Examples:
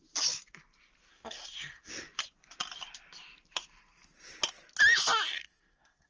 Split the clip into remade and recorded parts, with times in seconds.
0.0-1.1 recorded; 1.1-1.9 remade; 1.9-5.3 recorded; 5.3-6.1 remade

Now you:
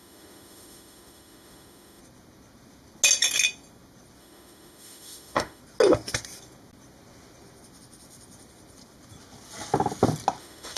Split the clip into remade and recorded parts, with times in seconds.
0.0-2.0 remade; 2.0-4.2 recorded; 4.2-5.6 remade; 5.6-10.4 recorded; 10.4-10.8 remade